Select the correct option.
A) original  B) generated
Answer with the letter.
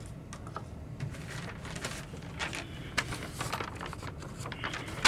A